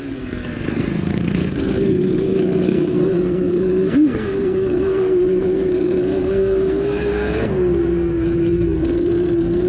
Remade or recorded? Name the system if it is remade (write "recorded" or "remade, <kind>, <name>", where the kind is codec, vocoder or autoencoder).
remade, codec, SNAC